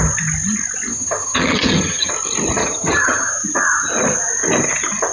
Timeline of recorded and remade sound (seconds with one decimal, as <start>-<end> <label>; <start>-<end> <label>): 0.0-0.9 recorded; 0.9-2.1 remade; 2.1-2.6 recorded; 2.6-3.3 remade; 3.3-5.1 recorded